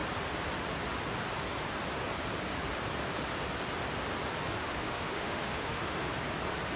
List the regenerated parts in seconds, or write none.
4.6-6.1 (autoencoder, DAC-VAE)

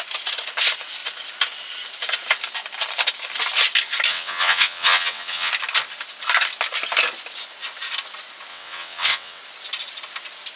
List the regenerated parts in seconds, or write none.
4.1-5.5 (vocoder, WaveNeXt); 8.5-9.4

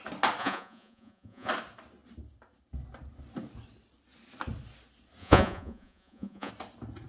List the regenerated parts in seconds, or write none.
0.4-1.5 (vocoder, Vocos); 5.2-6.5